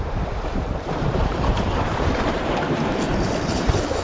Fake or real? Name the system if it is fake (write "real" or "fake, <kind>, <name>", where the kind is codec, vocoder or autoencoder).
fake, vocoder, BigVGAN v2